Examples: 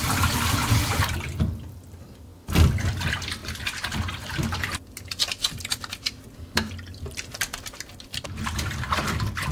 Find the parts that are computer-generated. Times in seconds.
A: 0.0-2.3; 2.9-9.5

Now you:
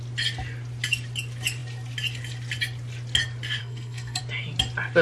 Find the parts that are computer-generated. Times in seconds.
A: 3.6-4.2

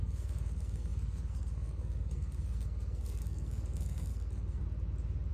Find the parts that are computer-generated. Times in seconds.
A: 0.0-4.6